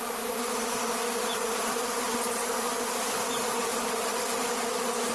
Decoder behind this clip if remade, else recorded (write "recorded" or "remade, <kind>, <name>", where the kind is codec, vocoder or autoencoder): recorded